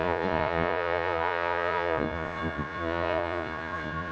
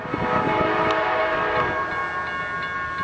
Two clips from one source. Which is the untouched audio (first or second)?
second